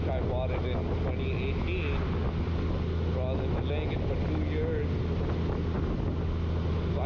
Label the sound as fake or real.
real